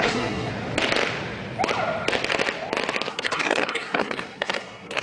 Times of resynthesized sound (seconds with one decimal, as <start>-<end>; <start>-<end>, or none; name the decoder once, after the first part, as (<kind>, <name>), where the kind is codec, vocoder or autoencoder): 0.0-0.5 (codec, SNAC); 3.1-5.0